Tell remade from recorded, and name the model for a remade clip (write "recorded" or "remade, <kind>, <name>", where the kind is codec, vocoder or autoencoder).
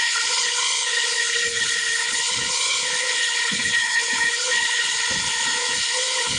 remade, codec, HILCodec